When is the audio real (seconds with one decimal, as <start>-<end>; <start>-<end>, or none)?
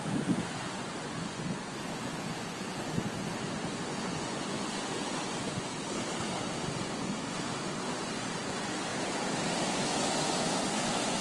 5.7-6.7; 8.9-9.7